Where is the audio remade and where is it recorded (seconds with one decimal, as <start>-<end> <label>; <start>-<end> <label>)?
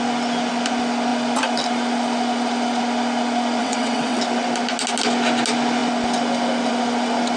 0.0-3.6 recorded; 3.6-4.2 remade; 4.2-7.4 recorded